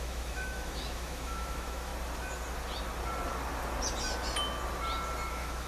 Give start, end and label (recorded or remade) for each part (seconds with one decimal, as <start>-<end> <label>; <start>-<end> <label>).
0.0-1.9 remade; 1.9-5.3 recorded; 5.3-5.7 remade